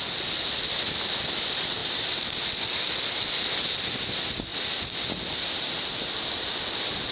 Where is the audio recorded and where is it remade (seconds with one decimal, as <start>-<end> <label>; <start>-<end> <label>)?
0.0-7.1 recorded